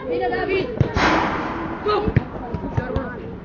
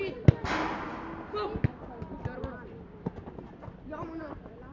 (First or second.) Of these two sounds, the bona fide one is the second